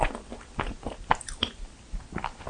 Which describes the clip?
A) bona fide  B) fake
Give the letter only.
A